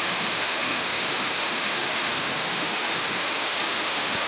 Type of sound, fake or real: fake